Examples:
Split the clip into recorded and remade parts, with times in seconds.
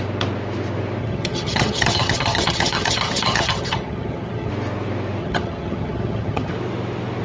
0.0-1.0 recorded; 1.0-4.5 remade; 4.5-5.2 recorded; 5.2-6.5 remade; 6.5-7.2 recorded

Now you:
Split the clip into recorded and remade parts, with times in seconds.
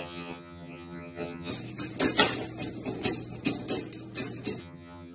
0.0-1.5 remade; 1.5-4.6 recorded; 4.6-5.1 remade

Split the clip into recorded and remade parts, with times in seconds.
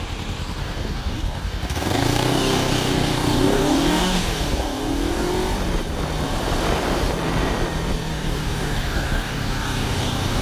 0.0-0.6 recorded; 0.6-5.3 remade; 5.3-8.1 recorded; 8.1-10.4 remade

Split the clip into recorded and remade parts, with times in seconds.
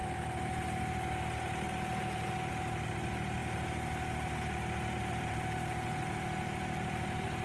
0.0-7.4 recorded